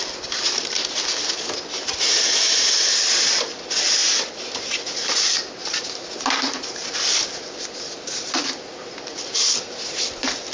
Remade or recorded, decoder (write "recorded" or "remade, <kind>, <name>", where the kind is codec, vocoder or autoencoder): recorded